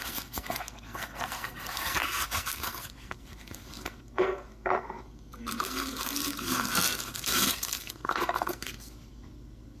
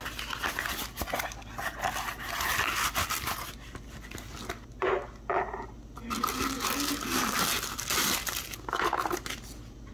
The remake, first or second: first